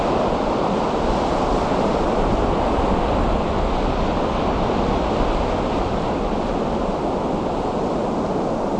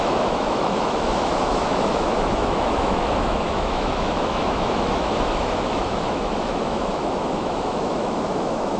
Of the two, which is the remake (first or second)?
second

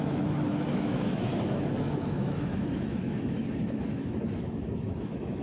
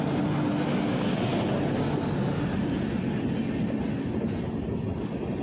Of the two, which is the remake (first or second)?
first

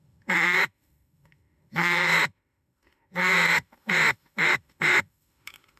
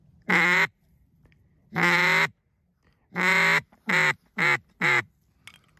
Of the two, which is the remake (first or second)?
first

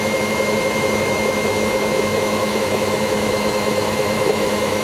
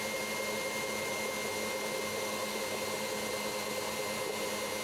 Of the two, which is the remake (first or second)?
first